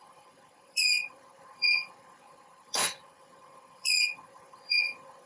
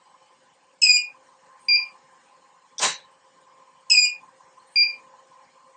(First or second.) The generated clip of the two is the first